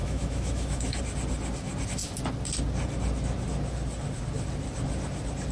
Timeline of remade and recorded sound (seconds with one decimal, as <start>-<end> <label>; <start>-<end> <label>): 0.0-1.0 remade; 1.0-5.5 recorded